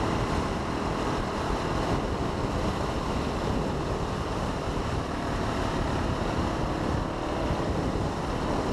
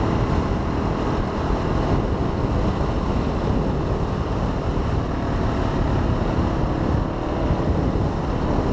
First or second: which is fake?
first